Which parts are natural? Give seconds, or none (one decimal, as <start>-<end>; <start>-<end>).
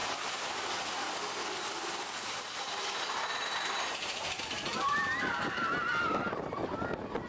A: 0.0-7.3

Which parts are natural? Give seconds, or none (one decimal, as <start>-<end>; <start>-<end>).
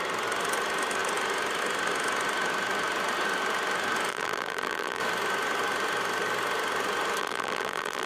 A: 0.0-4.1; 5.0-7.2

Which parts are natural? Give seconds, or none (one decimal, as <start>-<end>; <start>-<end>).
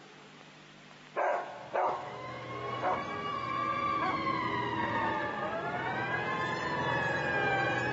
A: 0.0-1.3; 2.5-7.9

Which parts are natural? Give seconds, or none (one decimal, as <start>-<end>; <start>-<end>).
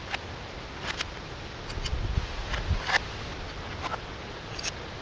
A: 0.0-5.0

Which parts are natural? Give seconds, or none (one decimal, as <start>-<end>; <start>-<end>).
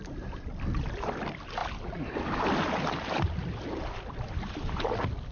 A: 0.0-5.3